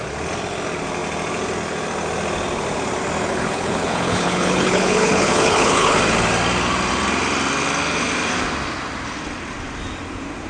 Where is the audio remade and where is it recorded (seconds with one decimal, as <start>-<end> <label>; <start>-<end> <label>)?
0.0-3.3 recorded; 3.3-6.0 remade; 6.0-10.5 recorded